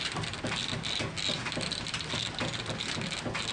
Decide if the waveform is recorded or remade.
recorded